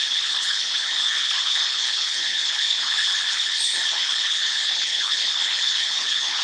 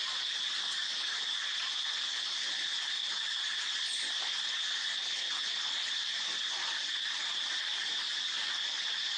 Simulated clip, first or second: first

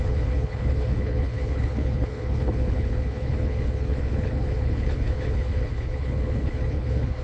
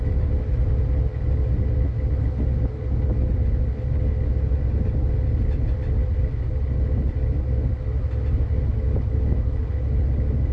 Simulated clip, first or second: first